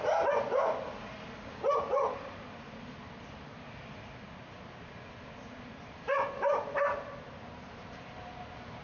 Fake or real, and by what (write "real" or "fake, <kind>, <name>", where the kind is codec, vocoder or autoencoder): real